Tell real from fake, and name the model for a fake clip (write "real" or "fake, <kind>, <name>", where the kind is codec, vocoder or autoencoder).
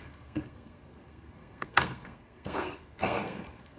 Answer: fake, codec, SNAC